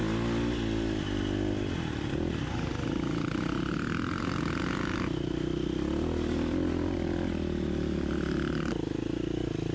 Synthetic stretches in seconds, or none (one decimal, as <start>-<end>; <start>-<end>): none